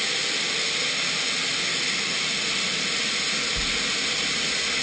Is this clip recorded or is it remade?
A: recorded